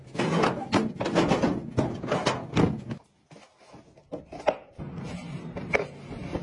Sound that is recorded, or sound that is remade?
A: recorded